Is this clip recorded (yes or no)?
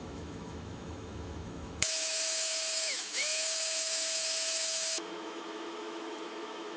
no